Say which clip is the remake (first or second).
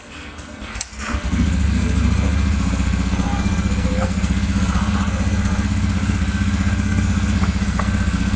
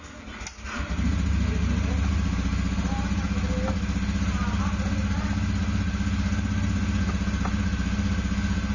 first